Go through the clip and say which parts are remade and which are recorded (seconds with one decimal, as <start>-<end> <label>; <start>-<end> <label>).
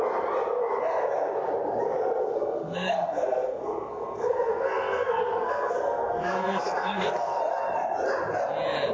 0.0-2.2 recorded; 2.2-7.4 remade; 7.4-8.9 recorded